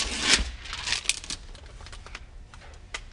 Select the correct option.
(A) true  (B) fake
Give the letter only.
A